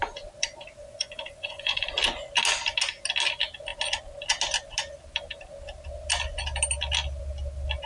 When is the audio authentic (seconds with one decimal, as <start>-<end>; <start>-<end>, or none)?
0.0-0.8; 1.9-7.9